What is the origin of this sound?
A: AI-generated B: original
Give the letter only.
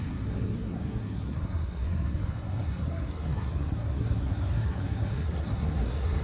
A